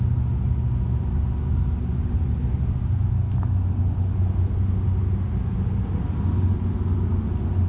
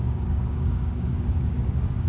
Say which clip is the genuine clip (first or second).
first